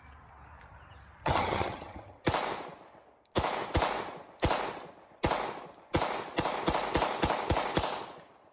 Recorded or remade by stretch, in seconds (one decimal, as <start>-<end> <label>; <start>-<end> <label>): 0.0-1.2 recorded; 1.2-2.2 remade; 2.2-8.5 recorded